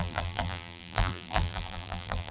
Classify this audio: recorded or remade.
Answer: remade